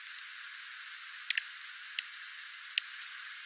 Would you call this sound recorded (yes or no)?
yes